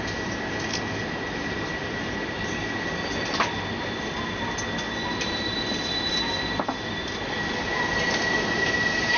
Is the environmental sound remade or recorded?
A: recorded